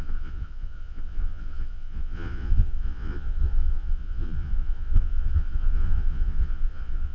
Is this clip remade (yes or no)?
yes